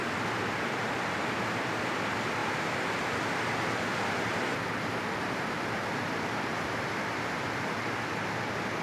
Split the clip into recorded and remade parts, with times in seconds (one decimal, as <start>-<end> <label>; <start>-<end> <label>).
0.0-8.8 recorded